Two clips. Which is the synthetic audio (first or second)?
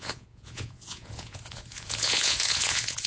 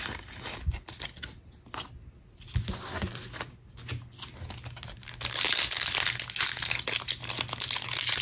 first